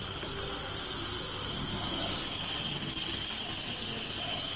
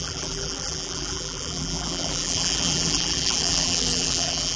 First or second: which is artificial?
second